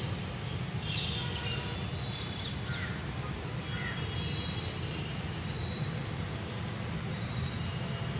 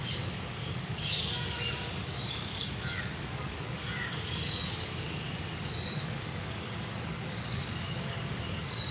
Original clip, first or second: first